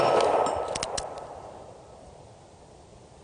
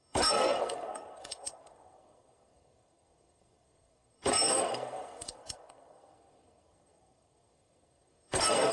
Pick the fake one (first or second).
second